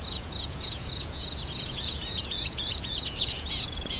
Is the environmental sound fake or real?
fake